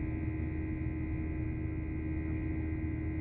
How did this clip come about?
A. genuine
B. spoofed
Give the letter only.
A